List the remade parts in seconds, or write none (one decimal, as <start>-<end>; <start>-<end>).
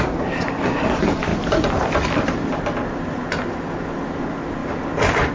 none